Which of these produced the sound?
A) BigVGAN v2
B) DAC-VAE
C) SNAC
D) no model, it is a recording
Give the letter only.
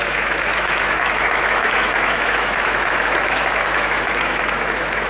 B